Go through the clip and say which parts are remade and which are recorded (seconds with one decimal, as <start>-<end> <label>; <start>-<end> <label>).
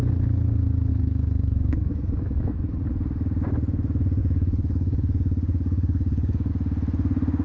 0.0-0.9 recorded; 0.9-2.8 remade; 2.8-4.2 recorded; 4.2-6.5 remade; 6.5-7.4 recorded